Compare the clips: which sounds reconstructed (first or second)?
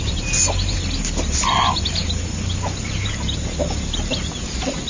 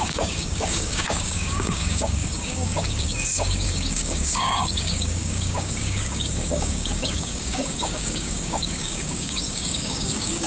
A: second